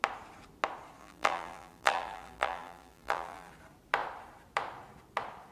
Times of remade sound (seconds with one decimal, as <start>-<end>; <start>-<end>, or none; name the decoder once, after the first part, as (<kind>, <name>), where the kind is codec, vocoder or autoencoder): 1.0-3.5 (vocoder, BigVGAN v2)